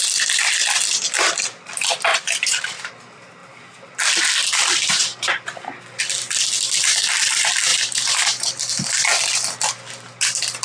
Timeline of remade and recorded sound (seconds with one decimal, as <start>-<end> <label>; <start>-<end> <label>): 0.0-2.1 recorded; 2.1-2.9 remade; 2.9-7.7 recorded; 7.7-8.5 remade; 8.5-10.6 recorded